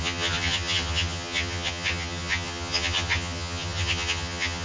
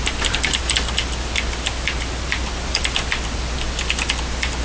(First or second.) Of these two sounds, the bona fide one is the second